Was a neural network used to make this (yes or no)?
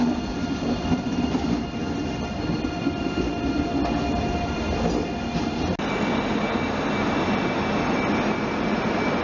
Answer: no